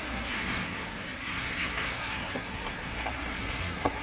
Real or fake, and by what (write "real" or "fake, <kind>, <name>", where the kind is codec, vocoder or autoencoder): fake, codec, SNAC